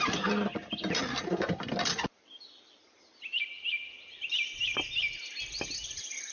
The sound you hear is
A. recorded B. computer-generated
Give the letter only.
A